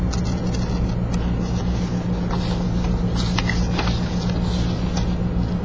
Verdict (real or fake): real